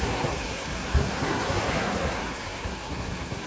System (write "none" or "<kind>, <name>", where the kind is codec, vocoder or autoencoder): codec, SNAC